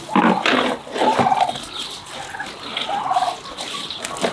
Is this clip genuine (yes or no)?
yes